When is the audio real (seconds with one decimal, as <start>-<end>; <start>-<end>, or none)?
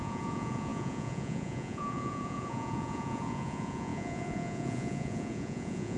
none